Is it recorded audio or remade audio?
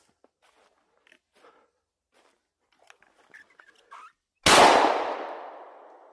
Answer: recorded